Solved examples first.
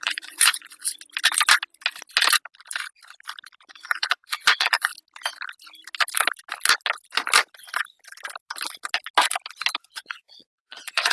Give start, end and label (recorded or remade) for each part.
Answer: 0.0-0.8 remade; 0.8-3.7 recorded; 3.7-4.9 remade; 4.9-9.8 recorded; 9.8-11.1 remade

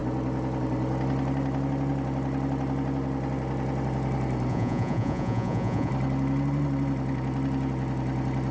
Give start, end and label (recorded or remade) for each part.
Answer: 0.0-4.5 recorded; 4.5-5.9 remade; 5.9-8.5 recorded

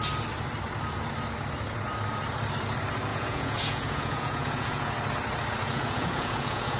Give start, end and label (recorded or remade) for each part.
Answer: 0.0-3.1 recorded; 3.1-4.9 remade; 4.9-5.6 recorded; 5.6-6.8 remade

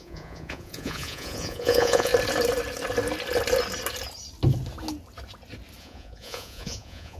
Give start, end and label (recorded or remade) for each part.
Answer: 0.0-2.1 remade; 2.1-5.8 recorded; 5.8-7.2 remade

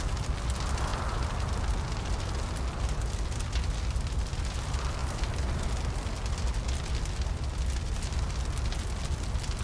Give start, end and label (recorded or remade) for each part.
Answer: 0.0-9.6 recorded

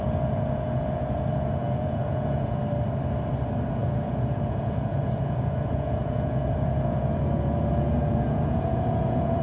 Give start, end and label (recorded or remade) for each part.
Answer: 0.0-2.6 remade; 2.6-3.7 recorded; 3.7-9.4 remade